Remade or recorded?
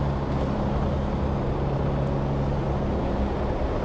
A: recorded